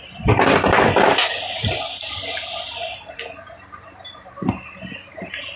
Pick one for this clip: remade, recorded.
recorded